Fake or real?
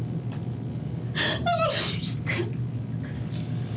real